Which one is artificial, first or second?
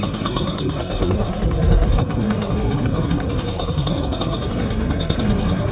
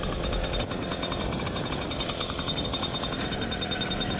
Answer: first